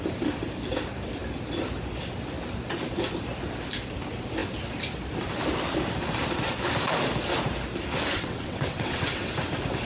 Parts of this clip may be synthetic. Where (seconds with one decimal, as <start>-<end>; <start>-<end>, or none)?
8.1-9.3

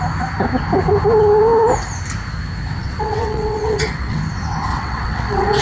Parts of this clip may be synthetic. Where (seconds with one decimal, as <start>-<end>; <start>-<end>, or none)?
2.8-4.2; 4.7-5.6